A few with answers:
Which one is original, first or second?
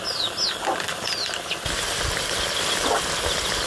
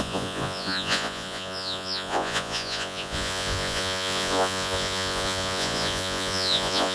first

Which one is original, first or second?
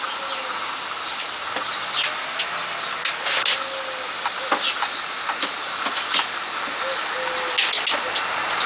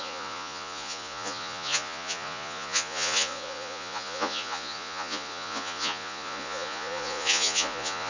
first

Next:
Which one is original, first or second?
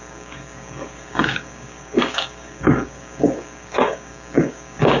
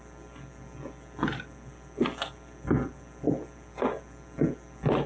second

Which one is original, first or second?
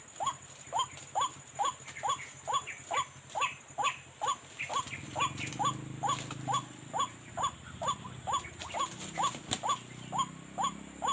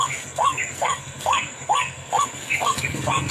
first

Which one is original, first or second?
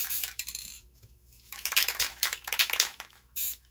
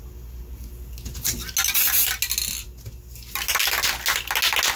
second